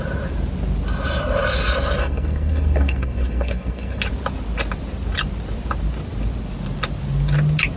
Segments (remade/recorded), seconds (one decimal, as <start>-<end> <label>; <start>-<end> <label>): 0.0-2.0 recorded; 2.0-4.0 remade; 4.0-7.8 recorded